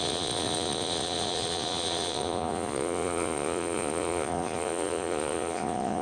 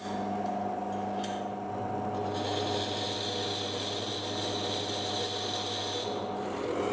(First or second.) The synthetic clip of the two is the first